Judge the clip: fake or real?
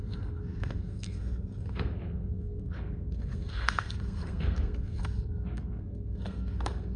fake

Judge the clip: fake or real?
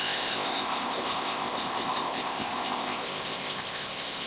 fake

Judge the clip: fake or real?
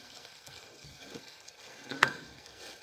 fake